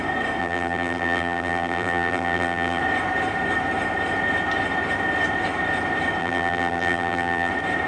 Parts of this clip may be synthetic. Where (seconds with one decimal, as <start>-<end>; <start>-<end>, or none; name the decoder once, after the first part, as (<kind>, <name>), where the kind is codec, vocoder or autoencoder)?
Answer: 0.4-2.8 (vocoder, BigVGAN v2); 6.2-7.5